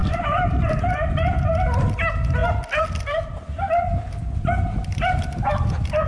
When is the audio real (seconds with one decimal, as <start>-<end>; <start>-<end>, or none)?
1.1-6.1